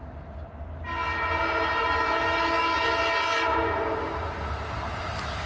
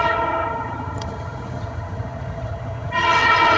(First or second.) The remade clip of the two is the second